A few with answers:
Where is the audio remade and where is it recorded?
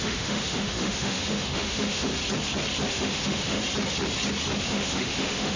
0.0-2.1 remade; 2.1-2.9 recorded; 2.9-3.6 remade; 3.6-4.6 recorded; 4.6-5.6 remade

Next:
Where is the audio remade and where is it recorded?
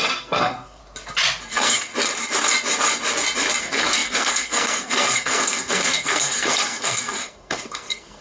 0.0-0.8 remade; 0.8-1.5 recorded; 1.5-1.9 remade; 1.9-3.6 recorded; 3.6-8.2 remade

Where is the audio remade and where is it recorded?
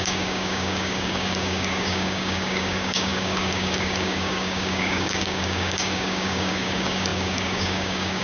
0.0-8.2 remade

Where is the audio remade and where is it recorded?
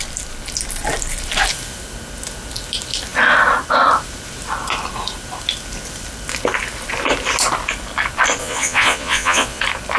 0.0-8.4 recorded; 8.4-9.6 remade; 9.6-10.0 recorded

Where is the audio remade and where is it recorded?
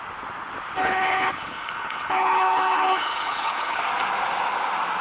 0.0-0.8 recorded; 0.8-3.8 remade; 3.8-5.0 recorded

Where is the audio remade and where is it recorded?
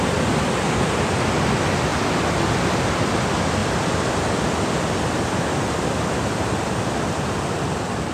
0.0-1.9 recorded; 1.9-2.8 remade; 2.8-3.6 recorded; 3.6-8.1 remade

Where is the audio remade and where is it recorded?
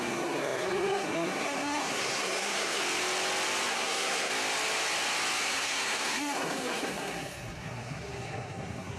0.0-2.8 remade; 2.8-3.7 recorded; 3.7-4.3 remade; 4.3-5.4 recorded; 5.4-9.0 remade